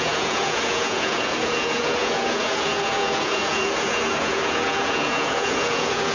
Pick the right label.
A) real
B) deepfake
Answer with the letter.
B